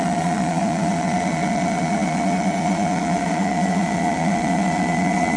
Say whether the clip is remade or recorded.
remade